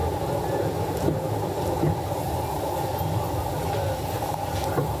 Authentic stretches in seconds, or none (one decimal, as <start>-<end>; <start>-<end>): 0.0-5.0